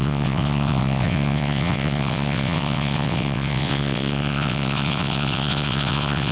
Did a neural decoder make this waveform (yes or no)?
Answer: yes